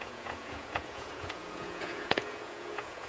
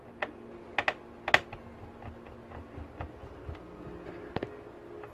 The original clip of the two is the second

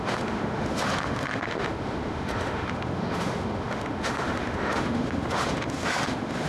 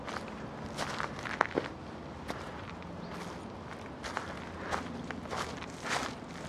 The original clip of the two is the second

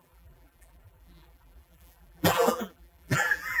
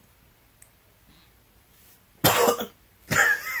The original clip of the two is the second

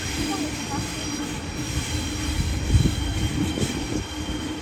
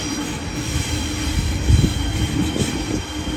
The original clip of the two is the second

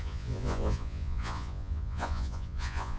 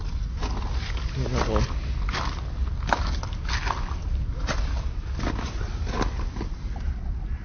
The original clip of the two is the second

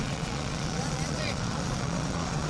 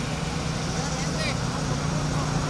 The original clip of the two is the second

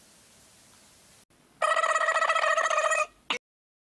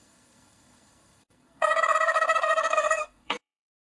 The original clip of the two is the first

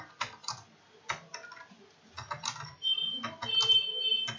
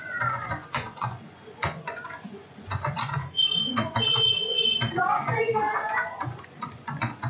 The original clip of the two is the first